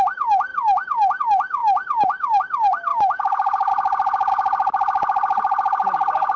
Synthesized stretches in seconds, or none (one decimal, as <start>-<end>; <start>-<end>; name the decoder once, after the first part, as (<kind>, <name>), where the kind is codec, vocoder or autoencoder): 2.9-3.7 (autoencoder, DAC-VAE)